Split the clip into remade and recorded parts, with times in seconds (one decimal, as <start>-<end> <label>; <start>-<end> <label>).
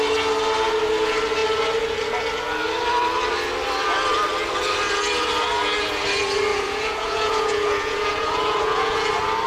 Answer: 0.0-6.5 recorded; 6.5-9.1 remade; 9.1-9.5 recorded